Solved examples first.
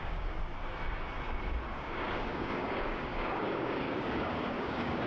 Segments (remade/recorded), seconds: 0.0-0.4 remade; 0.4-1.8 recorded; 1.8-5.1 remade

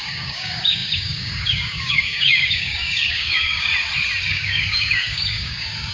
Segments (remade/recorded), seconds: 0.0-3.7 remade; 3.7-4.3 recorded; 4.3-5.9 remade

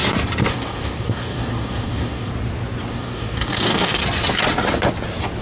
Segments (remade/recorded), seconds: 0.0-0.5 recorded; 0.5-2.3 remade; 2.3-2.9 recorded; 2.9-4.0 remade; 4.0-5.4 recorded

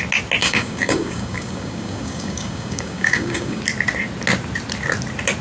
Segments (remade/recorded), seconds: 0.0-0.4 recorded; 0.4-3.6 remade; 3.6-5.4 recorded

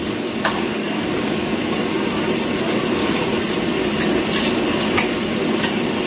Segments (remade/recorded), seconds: 0.0-1.6 remade; 1.6-2.6 recorded; 2.6-3.0 remade; 3.0-6.1 recorded

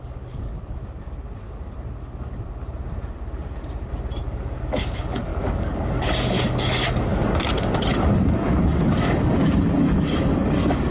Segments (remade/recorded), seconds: 0.0-0.8 remade; 0.8-4.2 recorded; 4.2-10.9 remade